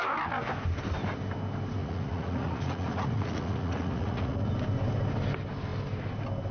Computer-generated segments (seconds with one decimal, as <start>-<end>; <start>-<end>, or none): 1.8-4.5